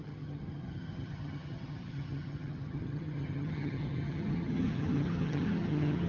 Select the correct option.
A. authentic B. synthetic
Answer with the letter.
B